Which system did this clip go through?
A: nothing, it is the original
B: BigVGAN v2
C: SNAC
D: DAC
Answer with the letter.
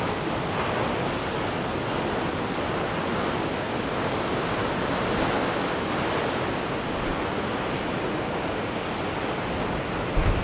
A